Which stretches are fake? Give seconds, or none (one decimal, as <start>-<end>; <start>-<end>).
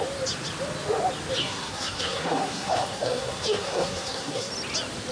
1.4-4.5